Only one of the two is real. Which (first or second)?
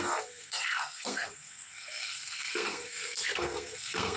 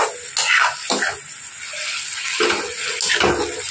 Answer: second